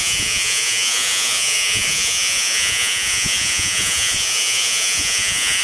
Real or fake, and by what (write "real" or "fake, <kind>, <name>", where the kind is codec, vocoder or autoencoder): fake, vocoder, Vocos